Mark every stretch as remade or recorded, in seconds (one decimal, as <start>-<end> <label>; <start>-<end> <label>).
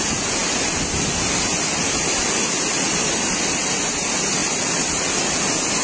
0.0-2.1 recorded; 2.1-3.6 remade; 3.6-4.4 recorded; 4.4-5.3 remade; 5.3-5.8 recorded